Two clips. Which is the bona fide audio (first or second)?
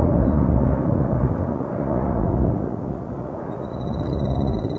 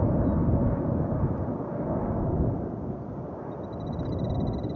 second